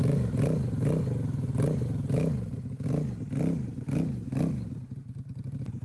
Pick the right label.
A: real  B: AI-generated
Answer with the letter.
A